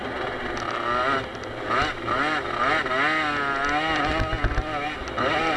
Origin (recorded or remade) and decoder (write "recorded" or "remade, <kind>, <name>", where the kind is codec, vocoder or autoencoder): recorded